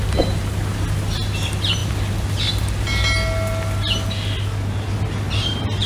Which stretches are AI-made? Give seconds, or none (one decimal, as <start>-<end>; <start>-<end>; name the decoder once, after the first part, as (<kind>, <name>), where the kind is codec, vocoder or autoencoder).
none

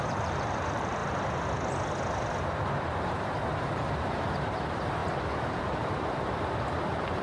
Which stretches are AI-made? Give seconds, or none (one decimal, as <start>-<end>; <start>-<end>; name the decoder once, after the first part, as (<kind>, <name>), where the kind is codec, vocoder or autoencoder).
0.0-1.0 (vocoder, BigVGAN v2); 3.6-7.2

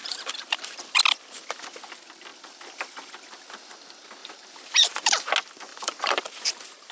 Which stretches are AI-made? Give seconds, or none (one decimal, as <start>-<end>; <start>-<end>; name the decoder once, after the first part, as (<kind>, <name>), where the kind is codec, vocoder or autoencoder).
0.0-1.0 (vocoder, BigVGAN v2); 4.2-5.3; 5.7-6.2